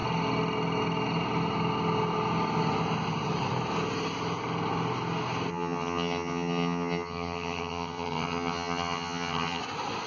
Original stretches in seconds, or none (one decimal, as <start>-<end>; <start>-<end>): 0.0-5.5; 9.6-10.1